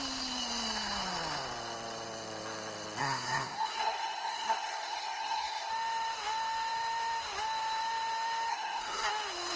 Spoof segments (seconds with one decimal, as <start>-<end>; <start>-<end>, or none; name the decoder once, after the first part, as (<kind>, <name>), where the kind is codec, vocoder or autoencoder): 3.0-5.7 (codec, SNAC); 8.5-9.1